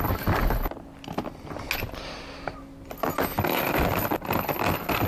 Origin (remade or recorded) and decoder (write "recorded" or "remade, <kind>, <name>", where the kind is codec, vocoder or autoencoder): recorded